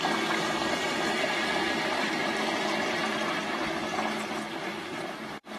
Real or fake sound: fake